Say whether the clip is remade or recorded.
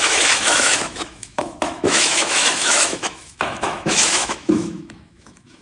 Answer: remade